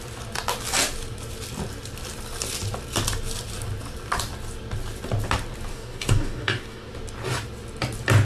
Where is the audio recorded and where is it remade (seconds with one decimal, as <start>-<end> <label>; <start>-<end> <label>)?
0.0-5.7 recorded; 5.7-6.9 remade; 6.9-8.2 recorded